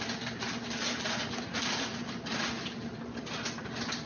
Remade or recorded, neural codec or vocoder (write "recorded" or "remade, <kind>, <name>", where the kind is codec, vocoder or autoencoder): recorded